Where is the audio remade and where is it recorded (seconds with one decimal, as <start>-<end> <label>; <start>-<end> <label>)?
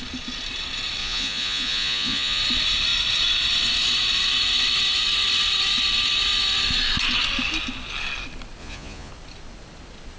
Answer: 0.0-1.0 recorded; 1.0-2.4 remade; 2.4-8.6 recorded; 8.6-9.1 remade; 9.1-10.2 recorded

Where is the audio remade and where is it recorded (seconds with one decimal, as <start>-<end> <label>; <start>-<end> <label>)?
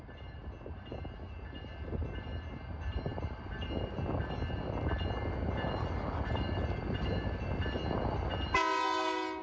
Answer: 0.0-9.4 recorded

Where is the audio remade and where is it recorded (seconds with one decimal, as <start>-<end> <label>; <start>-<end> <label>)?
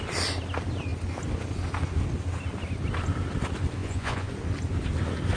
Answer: 0.0-3.8 recorded; 3.8-4.3 remade; 4.3-5.4 recorded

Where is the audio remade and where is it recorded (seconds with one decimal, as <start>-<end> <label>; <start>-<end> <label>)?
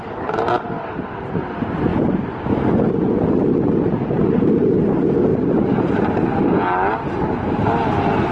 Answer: 0.0-1.9 recorded; 1.9-2.9 remade; 2.9-5.3 recorded; 5.3-6.3 remade; 6.3-8.3 recorded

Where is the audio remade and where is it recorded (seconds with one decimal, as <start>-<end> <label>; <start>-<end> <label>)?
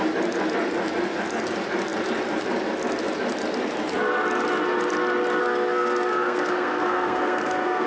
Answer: 0.0-5.4 recorded; 5.4-7.9 remade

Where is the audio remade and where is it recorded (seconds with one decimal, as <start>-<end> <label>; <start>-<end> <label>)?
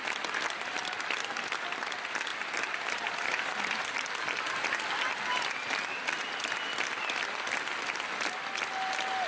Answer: 0.0-9.3 recorded